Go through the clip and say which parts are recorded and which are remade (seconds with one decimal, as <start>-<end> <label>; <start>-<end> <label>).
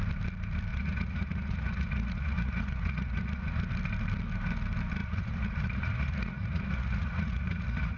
0.0-0.7 recorded; 0.7-3.5 remade; 3.5-5.0 recorded; 5.0-8.0 remade